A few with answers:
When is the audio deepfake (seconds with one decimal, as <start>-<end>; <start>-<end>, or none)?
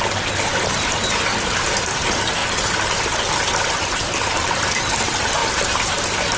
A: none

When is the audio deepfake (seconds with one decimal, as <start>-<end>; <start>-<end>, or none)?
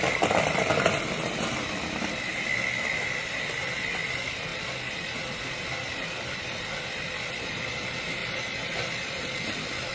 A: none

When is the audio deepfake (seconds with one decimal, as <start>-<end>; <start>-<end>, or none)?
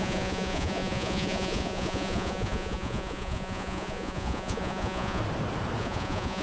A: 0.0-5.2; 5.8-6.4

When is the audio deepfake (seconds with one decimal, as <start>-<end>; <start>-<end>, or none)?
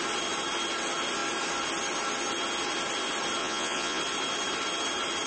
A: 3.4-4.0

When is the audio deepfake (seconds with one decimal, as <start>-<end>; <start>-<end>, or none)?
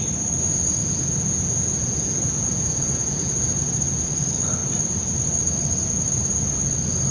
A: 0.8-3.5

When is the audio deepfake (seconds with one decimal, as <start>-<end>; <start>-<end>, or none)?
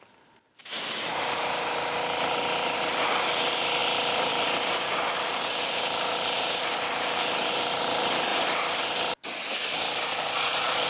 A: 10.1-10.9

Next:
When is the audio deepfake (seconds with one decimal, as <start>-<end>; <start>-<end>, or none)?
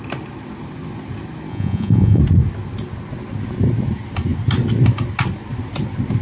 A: 1.5-2.2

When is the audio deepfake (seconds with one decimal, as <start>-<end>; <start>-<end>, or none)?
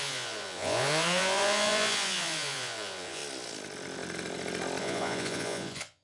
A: 0.0-3.2; 4.8-6.0